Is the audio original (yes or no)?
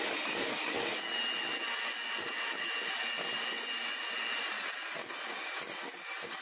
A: yes